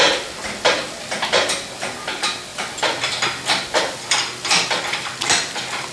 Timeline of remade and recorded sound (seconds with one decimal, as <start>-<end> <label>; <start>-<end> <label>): 0.0-5.9 recorded